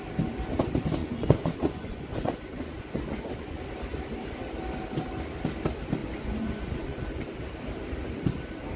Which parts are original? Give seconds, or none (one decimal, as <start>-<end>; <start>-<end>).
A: 0.0-1.0; 3.6-6.0; 7.1-8.8